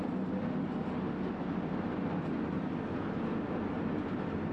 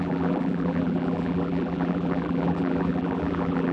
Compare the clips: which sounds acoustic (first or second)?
first